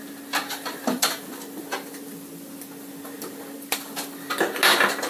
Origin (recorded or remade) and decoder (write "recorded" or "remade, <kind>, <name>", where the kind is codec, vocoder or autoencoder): recorded